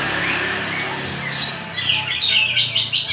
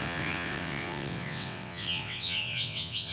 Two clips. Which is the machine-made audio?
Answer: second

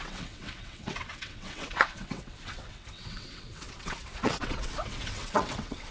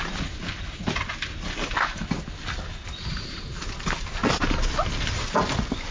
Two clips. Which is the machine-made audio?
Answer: first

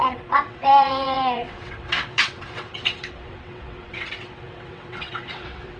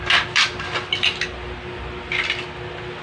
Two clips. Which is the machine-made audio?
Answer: first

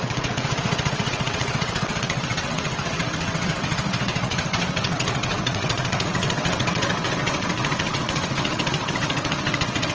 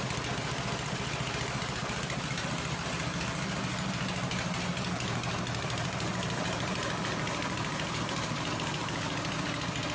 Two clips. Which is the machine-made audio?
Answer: first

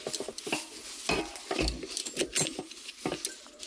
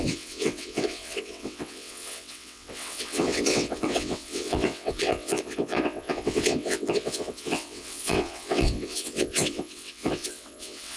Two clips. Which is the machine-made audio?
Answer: second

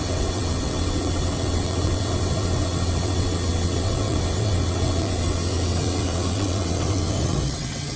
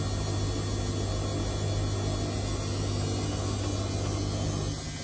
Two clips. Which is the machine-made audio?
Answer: first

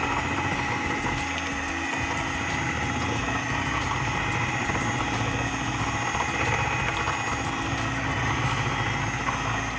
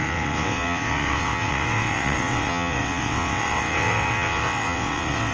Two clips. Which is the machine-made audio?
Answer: second